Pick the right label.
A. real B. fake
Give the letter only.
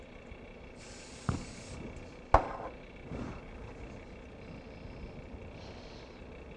A